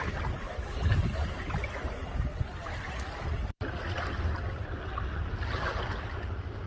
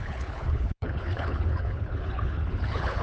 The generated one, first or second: second